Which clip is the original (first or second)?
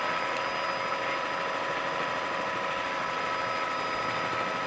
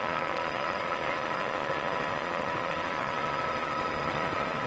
first